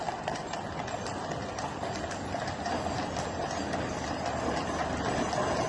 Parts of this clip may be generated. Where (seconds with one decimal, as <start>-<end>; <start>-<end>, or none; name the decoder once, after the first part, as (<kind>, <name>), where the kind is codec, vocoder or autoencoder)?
none